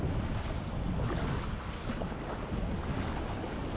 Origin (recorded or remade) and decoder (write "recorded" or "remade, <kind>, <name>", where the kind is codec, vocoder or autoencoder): recorded